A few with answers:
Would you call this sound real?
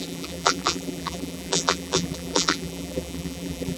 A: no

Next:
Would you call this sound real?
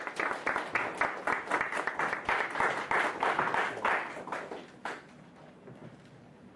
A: yes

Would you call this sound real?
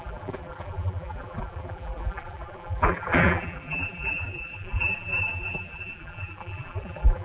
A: no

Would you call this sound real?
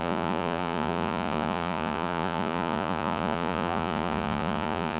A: no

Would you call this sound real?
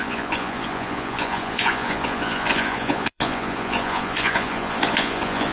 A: no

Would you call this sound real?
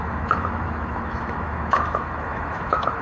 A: no